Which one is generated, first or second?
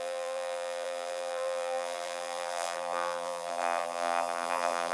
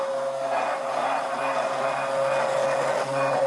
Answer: first